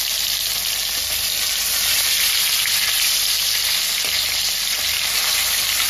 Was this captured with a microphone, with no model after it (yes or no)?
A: yes